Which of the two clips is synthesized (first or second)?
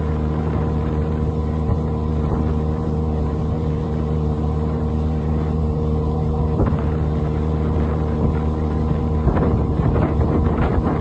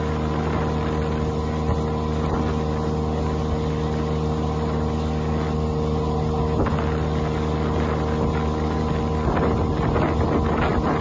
first